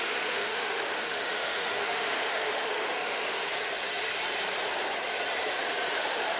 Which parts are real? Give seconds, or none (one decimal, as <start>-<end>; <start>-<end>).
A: 3.4-6.0